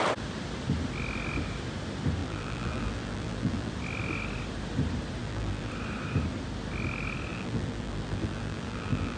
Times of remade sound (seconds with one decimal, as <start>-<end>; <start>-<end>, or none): 2.2-3.7; 5.2-5.7; 7.3-9.2